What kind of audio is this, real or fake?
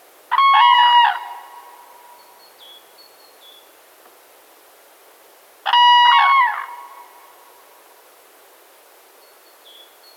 real